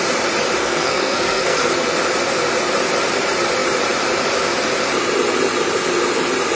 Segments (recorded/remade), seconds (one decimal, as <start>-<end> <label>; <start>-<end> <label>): 0.0-0.6 recorded; 0.6-1.7 remade; 1.7-6.5 recorded